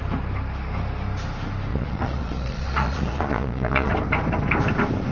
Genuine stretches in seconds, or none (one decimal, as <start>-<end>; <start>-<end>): 0.0-1.7; 3.9-5.1